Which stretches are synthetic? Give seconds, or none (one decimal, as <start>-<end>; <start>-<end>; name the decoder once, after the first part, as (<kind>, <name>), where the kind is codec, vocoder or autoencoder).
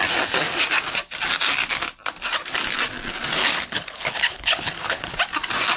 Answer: 3.4-5.1 (codec, HILCodec)